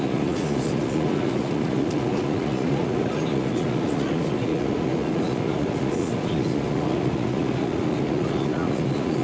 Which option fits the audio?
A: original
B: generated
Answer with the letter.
B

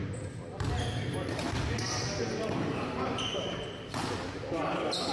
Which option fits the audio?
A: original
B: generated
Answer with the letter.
A